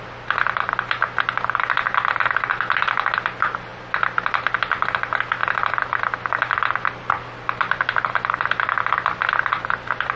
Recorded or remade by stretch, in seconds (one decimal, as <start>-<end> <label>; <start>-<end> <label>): 0.0-10.2 recorded